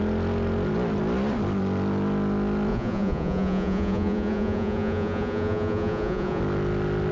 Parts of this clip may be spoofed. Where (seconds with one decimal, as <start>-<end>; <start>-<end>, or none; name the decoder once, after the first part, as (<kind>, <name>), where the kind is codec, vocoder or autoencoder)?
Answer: 2.7-6.4 (vocoder, Vocos)